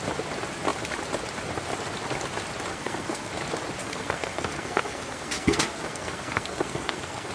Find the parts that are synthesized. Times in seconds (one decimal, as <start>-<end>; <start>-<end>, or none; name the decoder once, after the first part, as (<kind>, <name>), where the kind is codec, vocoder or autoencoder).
2.7-3.3 (codec, SNAC); 3.8-7.3